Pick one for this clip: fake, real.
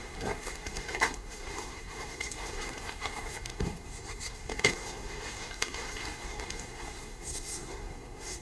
fake